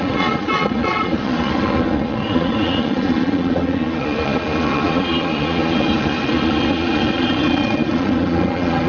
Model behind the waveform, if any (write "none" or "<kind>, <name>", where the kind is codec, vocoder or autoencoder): vocoder, Vocos